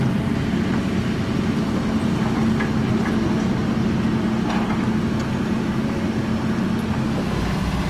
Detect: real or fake real